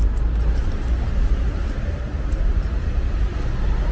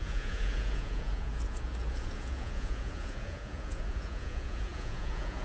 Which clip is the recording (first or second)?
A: first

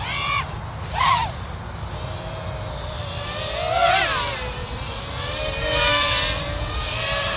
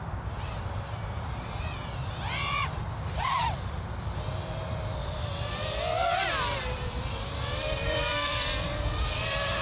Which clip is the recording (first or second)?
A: first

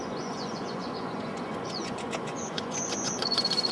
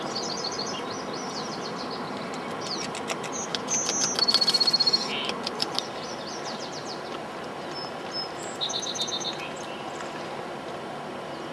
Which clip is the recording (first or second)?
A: second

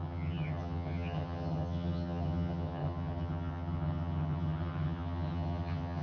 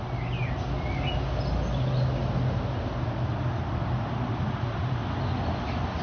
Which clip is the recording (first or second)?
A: second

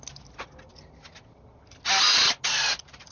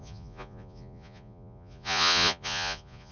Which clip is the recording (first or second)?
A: first